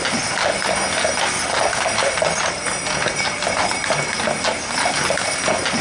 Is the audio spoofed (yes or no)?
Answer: no